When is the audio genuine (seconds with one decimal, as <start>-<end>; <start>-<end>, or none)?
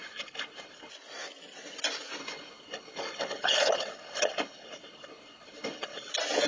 0.9-2.2; 6.1-6.5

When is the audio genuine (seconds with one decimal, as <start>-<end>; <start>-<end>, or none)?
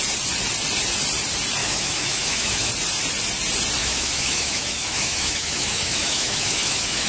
0.0-1.6; 2.7-3.8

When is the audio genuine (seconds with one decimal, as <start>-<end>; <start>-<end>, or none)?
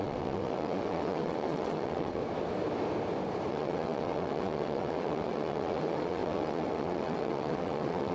2.2-3.5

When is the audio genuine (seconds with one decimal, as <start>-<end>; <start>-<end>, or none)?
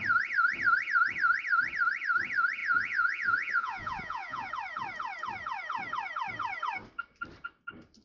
0.0-2.6; 4.5-8.0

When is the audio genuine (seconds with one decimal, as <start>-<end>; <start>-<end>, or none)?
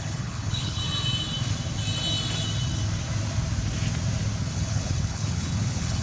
0.8-4.4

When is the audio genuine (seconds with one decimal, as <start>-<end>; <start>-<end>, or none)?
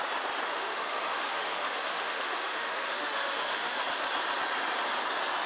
0.0-0.5; 3.8-5.5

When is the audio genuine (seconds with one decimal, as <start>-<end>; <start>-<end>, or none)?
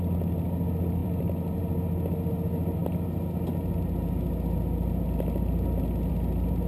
0.0-1.0; 1.6-6.7